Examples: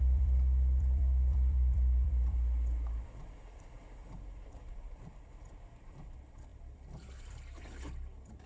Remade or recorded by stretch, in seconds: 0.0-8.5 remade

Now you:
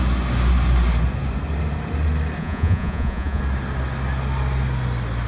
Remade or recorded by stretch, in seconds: 0.0-2.4 recorded; 2.4-3.4 remade; 3.4-5.3 recorded

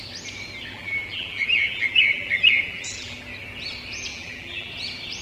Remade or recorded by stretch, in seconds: 0.0-0.7 recorded; 0.7-3.2 remade; 3.2-4.1 recorded; 4.1-4.7 remade; 4.7-5.2 recorded